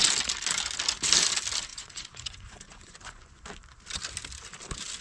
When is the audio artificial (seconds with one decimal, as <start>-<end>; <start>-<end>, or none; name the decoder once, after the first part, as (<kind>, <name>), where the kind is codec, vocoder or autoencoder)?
1.7-3.4 (vocoder, Vocos)